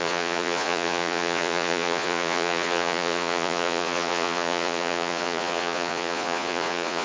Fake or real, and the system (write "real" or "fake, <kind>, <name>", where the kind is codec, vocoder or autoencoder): fake, vocoder, Vocos